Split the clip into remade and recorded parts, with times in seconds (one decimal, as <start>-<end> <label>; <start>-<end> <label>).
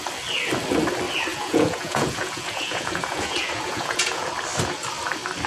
0.0-1.3 recorded; 1.3-4.3 remade; 4.3-5.5 recorded